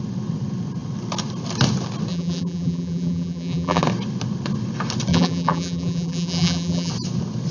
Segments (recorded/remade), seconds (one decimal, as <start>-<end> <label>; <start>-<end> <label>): 0.0-2.1 recorded; 2.1-3.8 remade; 3.8-5.1 recorded; 5.1-6.9 remade; 6.9-7.5 recorded

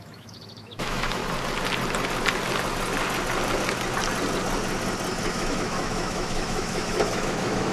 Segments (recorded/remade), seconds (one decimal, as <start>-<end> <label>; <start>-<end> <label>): 0.0-1.2 remade; 1.2-5.3 recorded; 5.3-7.7 remade

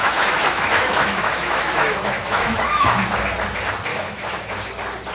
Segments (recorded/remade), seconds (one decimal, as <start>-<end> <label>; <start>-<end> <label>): 0.0-3.1 remade; 3.1-3.9 recorded; 3.9-4.5 remade; 4.5-5.1 recorded

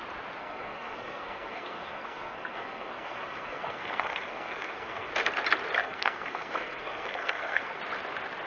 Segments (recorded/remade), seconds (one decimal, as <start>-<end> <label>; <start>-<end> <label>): 0.0-0.4 recorded; 0.4-5.1 remade; 5.1-5.8 recorded; 5.8-7.8 remade; 7.8-8.5 recorded

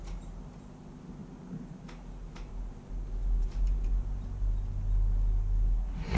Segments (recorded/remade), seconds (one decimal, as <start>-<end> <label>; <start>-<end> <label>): 0.0-6.2 recorded

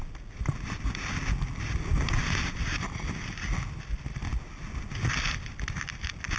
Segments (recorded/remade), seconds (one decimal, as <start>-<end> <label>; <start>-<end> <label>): 0.0-6.4 recorded

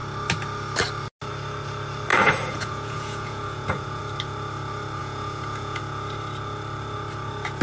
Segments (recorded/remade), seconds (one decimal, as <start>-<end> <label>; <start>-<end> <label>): 0.0-2.1 recorded; 2.1-4.0 remade; 4.0-5.0 recorded; 5.0-5.8 remade; 5.8-7.6 recorded

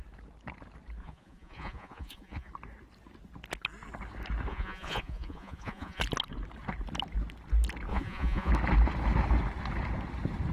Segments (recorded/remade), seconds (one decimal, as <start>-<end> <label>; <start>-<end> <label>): 0.0-1.0 recorded; 1.0-2.5 remade; 2.5-4.5 recorded; 4.5-6.0 remade; 6.0-7.9 recorded; 7.9-8.5 remade; 8.5-10.5 recorded